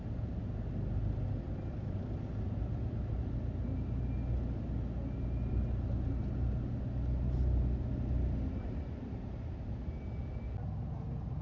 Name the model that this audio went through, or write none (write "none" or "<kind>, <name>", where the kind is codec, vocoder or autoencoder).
none